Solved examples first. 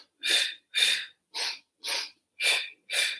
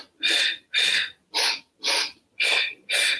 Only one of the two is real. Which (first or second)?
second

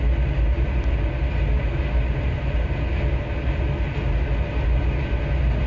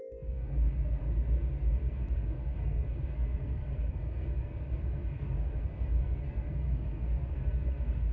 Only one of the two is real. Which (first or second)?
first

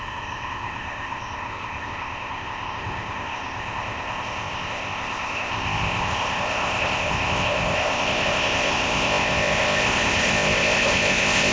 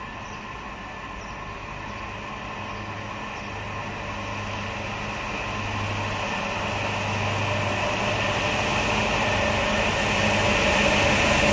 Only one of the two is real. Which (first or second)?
second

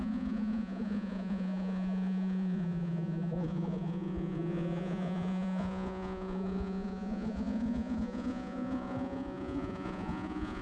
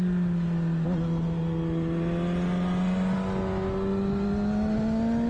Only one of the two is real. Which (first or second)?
second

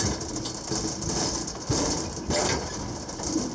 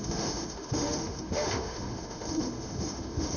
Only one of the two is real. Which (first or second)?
first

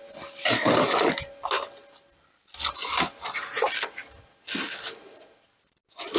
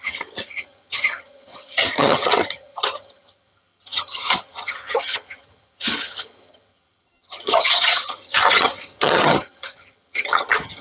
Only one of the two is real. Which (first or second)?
first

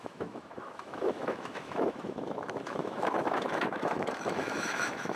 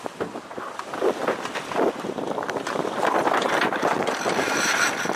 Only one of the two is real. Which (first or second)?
second